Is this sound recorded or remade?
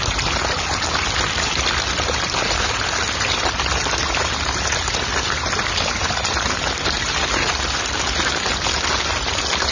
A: recorded